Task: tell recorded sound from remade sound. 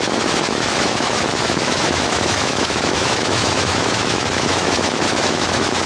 remade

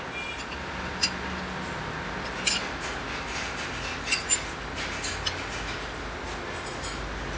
recorded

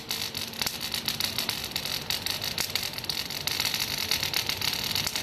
recorded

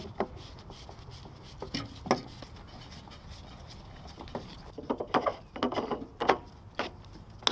recorded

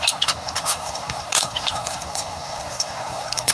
remade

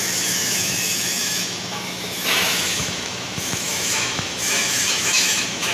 remade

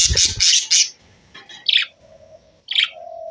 recorded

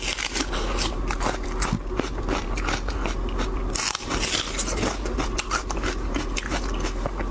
recorded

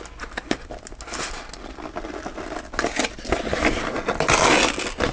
recorded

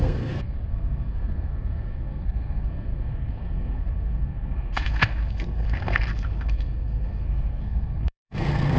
remade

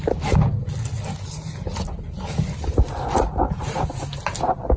recorded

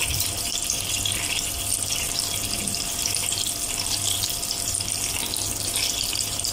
remade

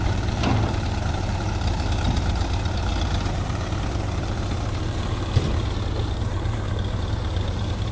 remade